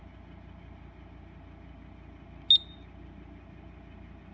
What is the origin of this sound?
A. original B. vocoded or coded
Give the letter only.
A